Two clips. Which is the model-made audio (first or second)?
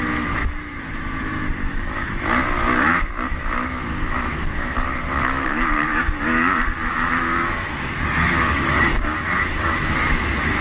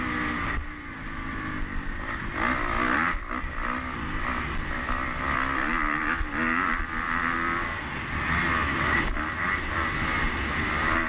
first